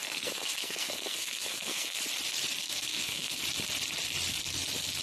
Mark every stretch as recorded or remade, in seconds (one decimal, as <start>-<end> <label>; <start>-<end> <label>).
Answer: 0.0-2.0 remade; 2.0-2.6 recorded; 2.6-3.4 remade; 3.4-5.0 recorded